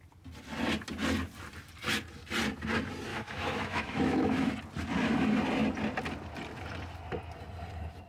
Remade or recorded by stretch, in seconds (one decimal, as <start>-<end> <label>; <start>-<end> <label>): 0.0-3.1 recorded; 3.1-4.5 remade; 4.5-8.1 recorded